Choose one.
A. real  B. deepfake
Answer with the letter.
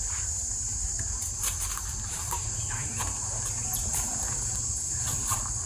B